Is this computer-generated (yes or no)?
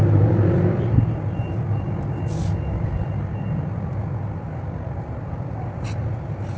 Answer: no